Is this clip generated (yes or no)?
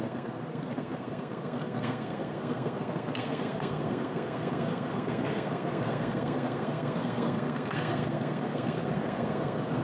yes